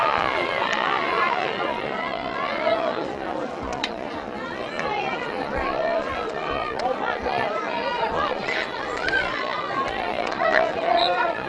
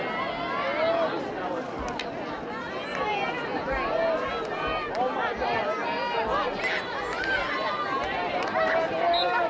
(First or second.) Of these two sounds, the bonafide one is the second